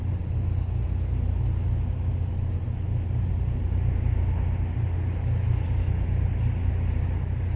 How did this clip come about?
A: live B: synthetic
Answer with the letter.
A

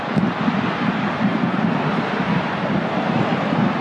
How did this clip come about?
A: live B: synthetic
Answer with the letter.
B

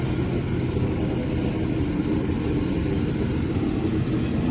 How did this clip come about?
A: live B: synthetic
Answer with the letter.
A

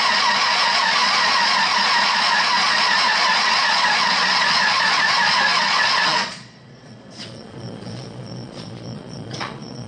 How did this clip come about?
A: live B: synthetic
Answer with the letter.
B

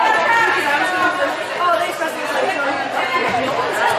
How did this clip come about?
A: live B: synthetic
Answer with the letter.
A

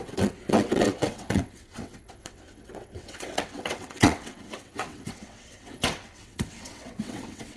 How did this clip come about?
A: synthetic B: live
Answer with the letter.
A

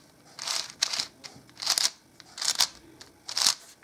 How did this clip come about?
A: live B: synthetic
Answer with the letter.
A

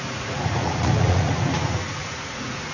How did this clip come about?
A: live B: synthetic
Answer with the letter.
B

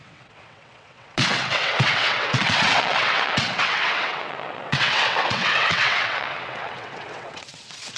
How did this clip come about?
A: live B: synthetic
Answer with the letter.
B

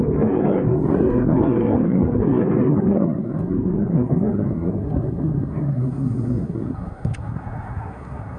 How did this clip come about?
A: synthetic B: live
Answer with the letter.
A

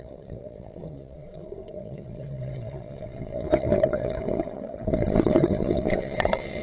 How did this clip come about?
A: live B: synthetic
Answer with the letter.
B